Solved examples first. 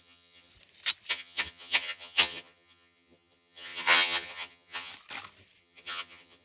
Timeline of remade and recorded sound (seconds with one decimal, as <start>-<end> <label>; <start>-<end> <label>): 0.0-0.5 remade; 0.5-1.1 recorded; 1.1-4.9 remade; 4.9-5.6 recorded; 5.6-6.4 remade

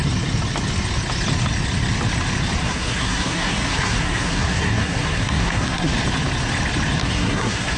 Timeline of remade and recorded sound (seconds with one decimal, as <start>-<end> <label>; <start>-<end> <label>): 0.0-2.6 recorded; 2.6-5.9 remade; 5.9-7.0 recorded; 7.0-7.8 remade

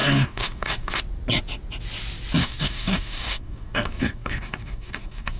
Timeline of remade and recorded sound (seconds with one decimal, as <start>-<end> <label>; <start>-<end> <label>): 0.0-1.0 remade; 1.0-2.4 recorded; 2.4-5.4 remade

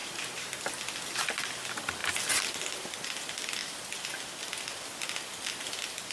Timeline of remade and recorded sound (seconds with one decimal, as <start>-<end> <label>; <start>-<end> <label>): 0.0-0.6 remade; 0.6-6.1 recorded

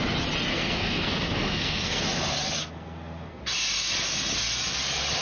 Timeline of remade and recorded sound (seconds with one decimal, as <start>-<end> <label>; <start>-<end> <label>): 0.0-0.5 recorded; 0.5-2.0 remade; 2.0-2.6 recorded; 2.6-3.4 remade; 3.4-5.2 recorded